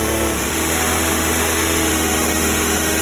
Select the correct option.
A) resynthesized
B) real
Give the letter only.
A